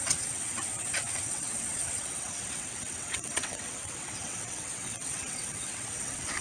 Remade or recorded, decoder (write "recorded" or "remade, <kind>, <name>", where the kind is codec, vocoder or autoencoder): remade, vocoder, WaveNeXt